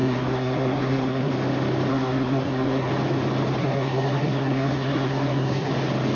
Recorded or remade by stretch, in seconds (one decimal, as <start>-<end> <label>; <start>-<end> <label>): 0.0-1.3 remade; 1.3-1.9 recorded; 1.9-2.9 remade; 2.9-3.6 recorded; 3.6-5.7 remade; 5.7-6.2 recorded

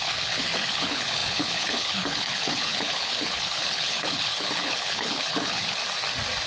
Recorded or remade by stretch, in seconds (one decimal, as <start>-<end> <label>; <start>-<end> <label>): 0.0-5.8 remade; 5.8-6.5 recorded

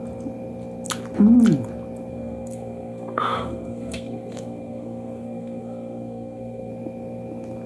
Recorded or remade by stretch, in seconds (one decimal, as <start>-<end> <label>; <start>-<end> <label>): 0.0-2.1 recorded; 2.1-6.7 remade; 6.7-7.7 recorded

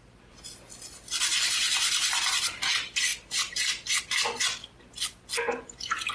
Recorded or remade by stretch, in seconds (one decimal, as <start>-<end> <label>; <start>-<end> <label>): 0.0-6.1 recorded

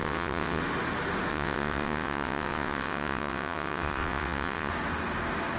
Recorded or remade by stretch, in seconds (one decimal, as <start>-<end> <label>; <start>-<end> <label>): 0.0-0.6 remade; 0.6-1.3 recorded; 1.3-4.7 remade; 4.7-5.6 recorded

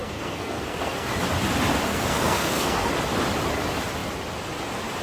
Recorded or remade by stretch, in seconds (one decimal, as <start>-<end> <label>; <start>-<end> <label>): 0.0-1.1 remade; 1.1-1.9 recorded; 1.9-2.9 remade; 2.9-5.0 recorded